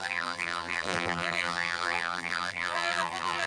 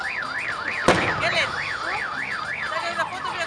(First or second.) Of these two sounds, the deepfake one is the first